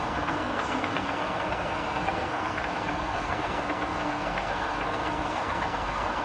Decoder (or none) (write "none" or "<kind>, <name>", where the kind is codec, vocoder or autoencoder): codec, SNAC